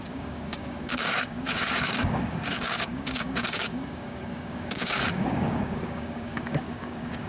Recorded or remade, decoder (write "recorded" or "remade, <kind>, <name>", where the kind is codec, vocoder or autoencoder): remade, codec, DAC